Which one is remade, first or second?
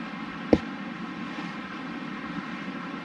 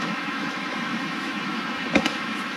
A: second